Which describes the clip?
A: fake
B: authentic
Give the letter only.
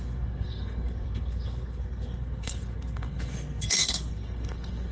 A